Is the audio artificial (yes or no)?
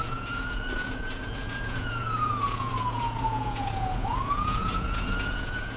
yes